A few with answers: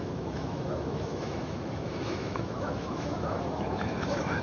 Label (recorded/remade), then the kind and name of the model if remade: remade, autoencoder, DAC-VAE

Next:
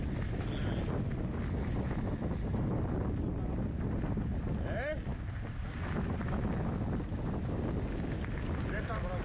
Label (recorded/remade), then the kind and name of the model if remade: recorded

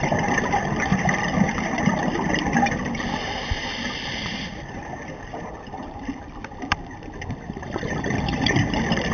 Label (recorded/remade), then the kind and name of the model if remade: remade, vocoder, BigVGAN v2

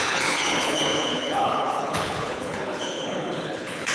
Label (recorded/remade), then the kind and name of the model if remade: remade, codec, HILCodec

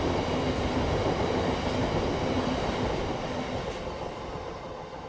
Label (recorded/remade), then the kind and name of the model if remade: recorded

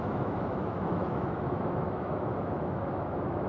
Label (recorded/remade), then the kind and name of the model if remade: remade, autoencoder, DAC-VAE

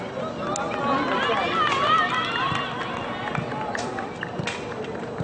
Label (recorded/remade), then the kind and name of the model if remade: recorded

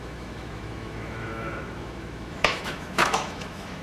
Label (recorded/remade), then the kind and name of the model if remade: remade, autoencoder, DAC-VAE